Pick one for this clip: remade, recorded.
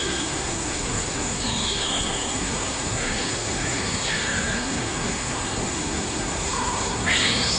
remade